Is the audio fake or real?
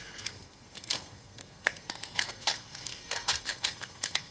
fake